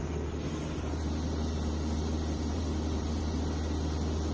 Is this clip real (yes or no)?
yes